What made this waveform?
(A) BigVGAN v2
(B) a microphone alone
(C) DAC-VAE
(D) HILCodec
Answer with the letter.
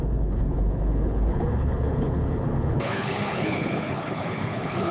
D